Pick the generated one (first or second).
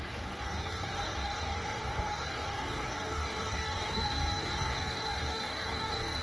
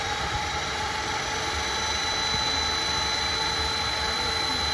first